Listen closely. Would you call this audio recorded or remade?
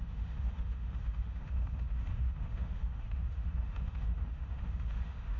remade